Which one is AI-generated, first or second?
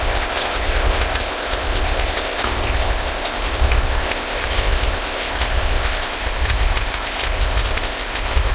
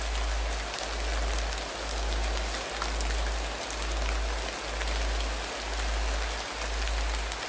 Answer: first